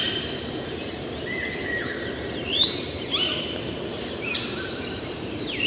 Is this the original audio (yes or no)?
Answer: no